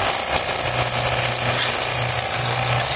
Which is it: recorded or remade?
recorded